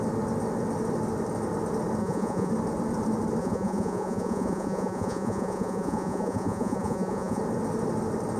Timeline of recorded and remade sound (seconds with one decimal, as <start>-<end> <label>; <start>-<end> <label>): 0.0-2.0 recorded; 2.0-2.5 remade; 2.5-3.4 recorded; 3.4-7.4 remade; 7.4-8.4 recorded